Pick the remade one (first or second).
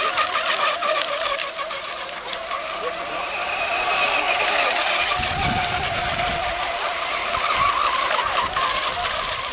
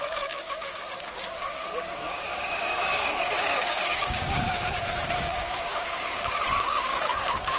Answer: second